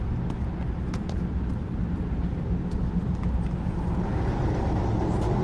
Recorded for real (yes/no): yes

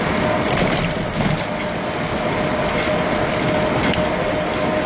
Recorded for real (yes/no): yes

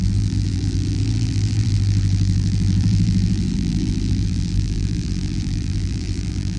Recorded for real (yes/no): no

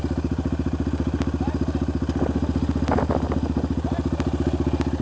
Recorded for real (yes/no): yes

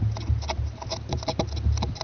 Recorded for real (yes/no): yes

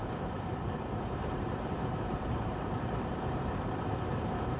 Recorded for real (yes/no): no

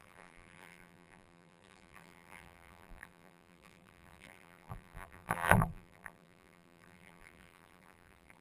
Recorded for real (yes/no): no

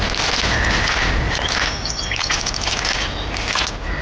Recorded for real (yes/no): yes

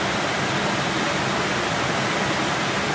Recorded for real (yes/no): yes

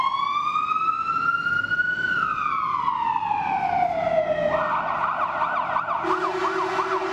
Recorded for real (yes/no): yes